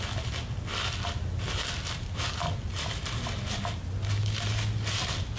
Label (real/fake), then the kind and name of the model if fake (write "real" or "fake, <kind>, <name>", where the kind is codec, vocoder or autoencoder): real